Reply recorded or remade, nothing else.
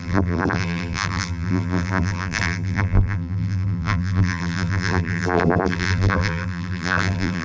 remade